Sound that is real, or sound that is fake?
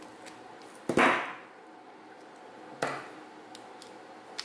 real